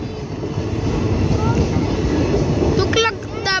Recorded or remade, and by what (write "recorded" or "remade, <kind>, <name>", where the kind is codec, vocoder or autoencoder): recorded